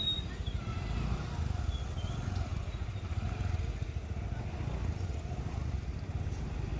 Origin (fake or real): real